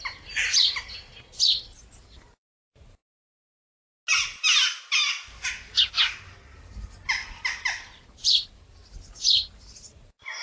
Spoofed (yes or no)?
no